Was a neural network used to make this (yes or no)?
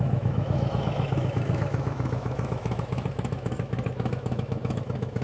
yes